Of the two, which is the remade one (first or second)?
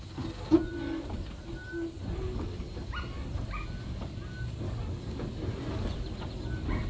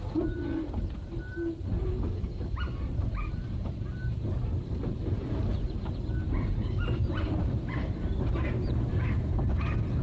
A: second